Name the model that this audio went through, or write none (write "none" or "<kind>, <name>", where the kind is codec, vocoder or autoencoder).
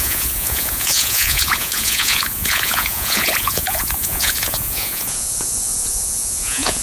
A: vocoder, Vocos